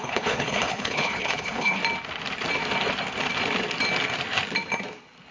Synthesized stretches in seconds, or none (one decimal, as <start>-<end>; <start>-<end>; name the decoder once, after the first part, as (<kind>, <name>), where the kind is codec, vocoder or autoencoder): 0.0-1.8 (codec, HILCodec)